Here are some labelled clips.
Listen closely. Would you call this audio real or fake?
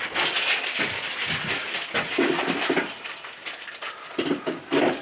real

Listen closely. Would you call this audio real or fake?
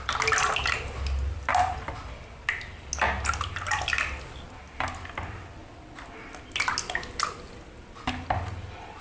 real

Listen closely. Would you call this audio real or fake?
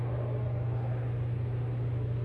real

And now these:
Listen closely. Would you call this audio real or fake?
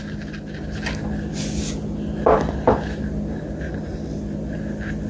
real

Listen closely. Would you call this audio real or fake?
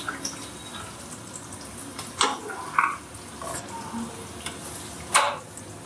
real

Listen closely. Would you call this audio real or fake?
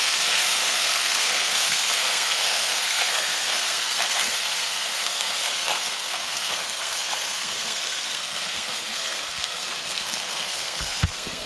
fake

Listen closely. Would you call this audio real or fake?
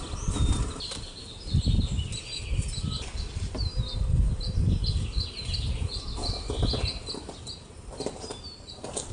real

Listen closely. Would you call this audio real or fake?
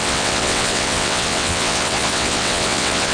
fake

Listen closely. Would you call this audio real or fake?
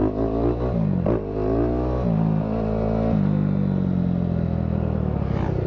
real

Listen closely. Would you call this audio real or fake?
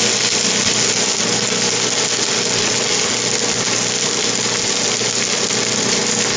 real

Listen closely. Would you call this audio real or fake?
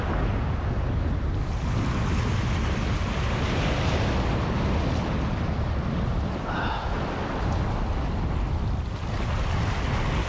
real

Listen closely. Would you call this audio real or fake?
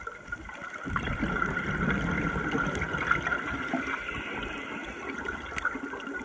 real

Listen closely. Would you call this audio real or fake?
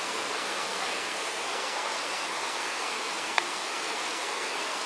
fake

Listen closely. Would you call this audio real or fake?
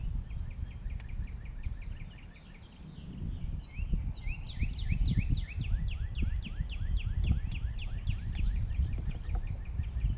real